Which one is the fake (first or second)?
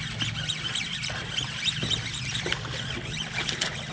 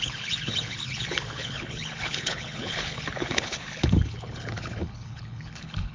second